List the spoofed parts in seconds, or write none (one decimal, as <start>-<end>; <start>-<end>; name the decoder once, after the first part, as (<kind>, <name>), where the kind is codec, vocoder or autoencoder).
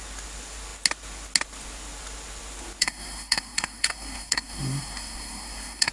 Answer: 2.8-5.9 (codec, SNAC)